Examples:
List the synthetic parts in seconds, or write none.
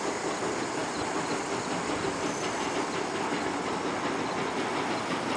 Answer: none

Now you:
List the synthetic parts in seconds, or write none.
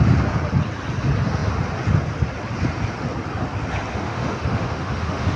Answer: 3.9-5.4 (autoencoder, DAC-VAE)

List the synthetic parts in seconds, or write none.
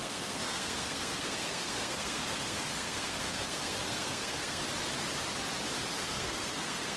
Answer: 0.0-4.6 (codec, SNAC); 5.9-7.0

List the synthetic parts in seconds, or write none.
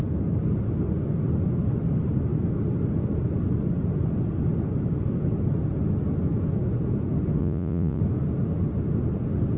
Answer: 7.4-8.0 (vocoder, Vocos)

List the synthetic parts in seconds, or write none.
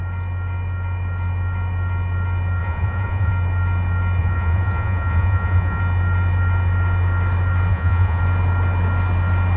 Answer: 2.6-3.3 (vocoder, Vocos); 4.2-5.8; 7.7-8.2